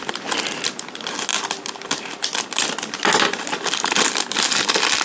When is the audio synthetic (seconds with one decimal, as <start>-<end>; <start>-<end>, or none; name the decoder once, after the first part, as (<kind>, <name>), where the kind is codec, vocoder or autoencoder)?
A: none